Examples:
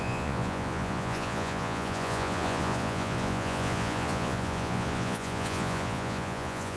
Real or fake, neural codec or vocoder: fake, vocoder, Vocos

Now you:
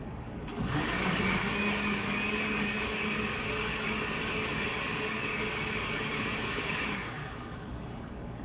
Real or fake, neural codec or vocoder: fake, codec, DAC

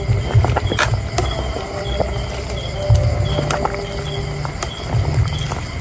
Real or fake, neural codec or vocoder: real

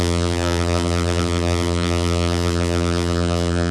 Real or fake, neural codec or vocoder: fake, vocoder, BigVGAN v2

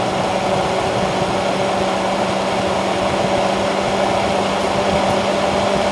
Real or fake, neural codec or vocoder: real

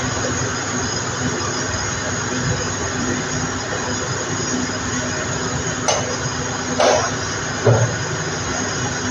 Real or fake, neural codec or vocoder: real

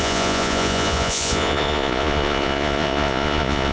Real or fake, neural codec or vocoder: fake, vocoder, Vocos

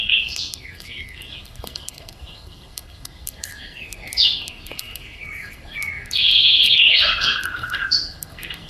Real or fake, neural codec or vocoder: fake, codec, SNAC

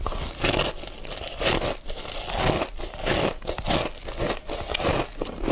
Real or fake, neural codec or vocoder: real